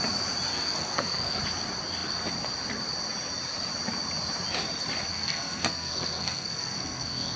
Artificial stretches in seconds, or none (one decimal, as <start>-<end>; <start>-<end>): 0.5-1.4; 5.1-7.4